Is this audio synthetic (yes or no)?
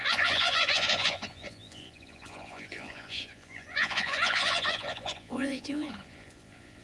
yes